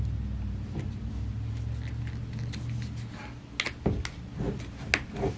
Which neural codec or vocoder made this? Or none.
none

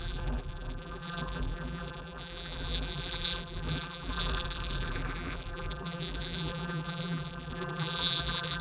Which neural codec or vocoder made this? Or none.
vocoder, BigVGAN v2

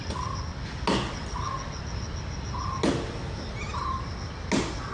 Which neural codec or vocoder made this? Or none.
none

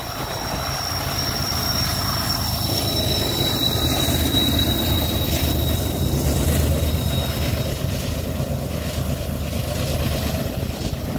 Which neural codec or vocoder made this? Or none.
none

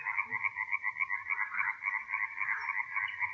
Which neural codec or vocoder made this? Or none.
none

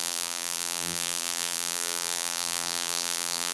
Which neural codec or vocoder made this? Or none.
vocoder, BigVGAN v2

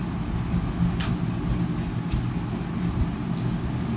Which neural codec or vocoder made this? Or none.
none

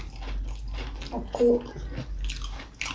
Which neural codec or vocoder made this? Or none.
none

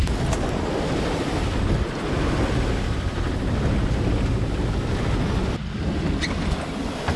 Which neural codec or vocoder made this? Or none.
none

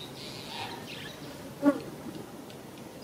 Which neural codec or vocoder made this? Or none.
none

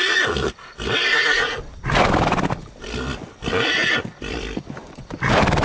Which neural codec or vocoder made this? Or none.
vocoder, BigVGAN v2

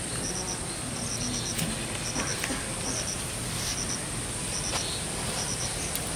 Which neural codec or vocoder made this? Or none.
none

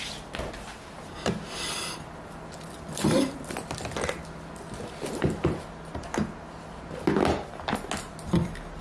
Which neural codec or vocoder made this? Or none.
none